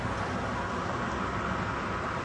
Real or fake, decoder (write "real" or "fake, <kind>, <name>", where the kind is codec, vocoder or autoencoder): real